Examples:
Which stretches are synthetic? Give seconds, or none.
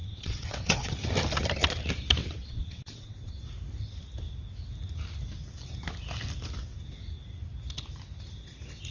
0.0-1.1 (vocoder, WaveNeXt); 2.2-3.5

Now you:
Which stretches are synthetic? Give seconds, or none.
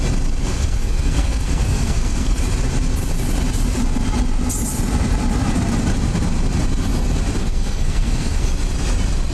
0.4-2.4 (codec, SNAC); 7.4-8.5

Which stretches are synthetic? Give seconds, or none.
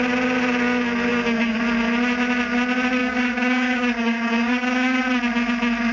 1.1-1.6 (codec, DAC); 3.0-5.0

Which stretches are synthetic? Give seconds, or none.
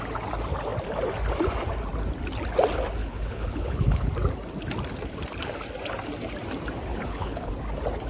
3.0-4.1 (codec, HILCodec); 6.9-7.5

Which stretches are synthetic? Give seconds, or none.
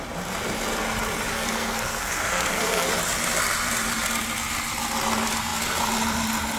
1.3-2.9 (codec, SNAC)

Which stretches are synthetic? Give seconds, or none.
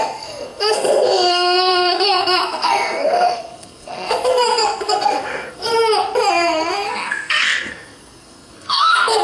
0.0-5.7 (codec, SNAC); 6.3-9.2